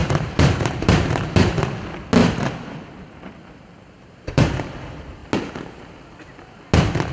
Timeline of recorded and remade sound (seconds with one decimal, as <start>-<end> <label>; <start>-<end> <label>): 0.0-1.7 remade; 1.7-2.2 recorded; 2.2-4.5 remade; 4.5-7.1 recorded